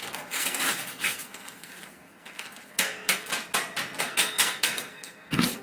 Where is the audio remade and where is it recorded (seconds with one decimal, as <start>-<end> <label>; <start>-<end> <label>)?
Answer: 0.0-3.3 remade; 3.3-4.0 recorded; 4.0-5.6 remade